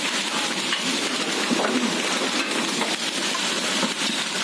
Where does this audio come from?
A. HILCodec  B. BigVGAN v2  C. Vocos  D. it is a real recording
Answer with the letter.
D